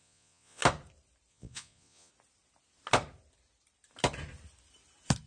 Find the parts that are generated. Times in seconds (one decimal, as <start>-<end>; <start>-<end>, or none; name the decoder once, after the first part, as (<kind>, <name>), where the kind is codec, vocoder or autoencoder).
0.0-0.6 (vocoder, Vocos); 1.3-2.1